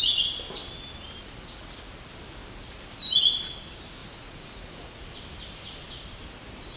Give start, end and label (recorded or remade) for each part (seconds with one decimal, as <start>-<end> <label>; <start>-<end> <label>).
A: 0.0-1.2 recorded; 1.2-1.8 remade; 1.8-4.0 recorded; 4.0-5.0 remade; 5.0-6.8 recorded